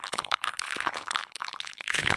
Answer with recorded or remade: remade